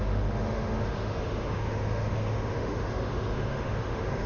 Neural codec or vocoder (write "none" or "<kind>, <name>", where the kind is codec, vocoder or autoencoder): autoencoder, DAC-VAE